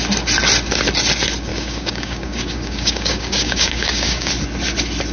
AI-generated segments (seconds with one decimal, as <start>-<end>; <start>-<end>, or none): 1.5-4.3